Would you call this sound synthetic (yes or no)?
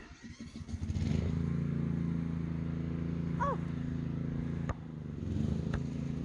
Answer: no